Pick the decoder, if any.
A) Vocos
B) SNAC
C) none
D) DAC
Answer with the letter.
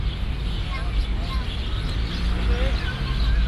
C